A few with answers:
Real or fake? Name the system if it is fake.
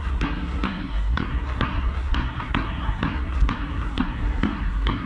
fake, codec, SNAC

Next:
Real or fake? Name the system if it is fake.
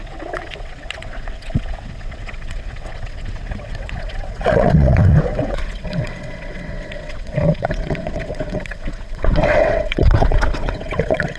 fake, vocoder, WaveNeXt